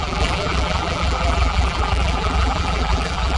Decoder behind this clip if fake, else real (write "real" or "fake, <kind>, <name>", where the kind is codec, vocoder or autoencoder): fake, vocoder, BigVGAN v2